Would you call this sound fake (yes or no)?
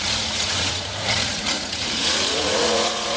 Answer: yes